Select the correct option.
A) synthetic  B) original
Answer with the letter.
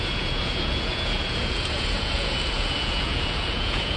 A